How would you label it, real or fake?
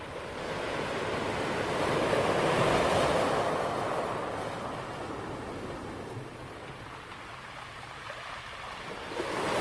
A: real